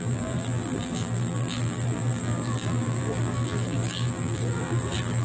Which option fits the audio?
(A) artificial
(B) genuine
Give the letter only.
A